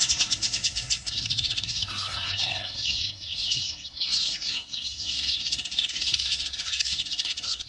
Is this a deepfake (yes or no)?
yes